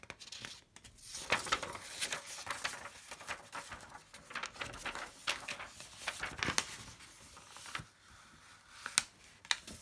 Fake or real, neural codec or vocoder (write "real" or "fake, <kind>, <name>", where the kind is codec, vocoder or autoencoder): real